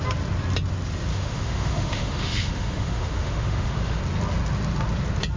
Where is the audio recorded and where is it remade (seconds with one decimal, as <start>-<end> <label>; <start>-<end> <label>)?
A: 0.0-1.1 recorded; 1.1-4.0 remade; 4.0-5.4 recorded